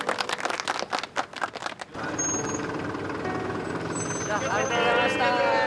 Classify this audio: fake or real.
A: real